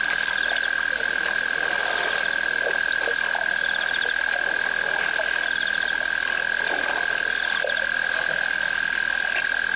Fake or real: real